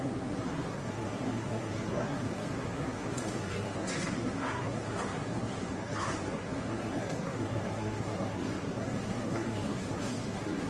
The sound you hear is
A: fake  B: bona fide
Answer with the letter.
A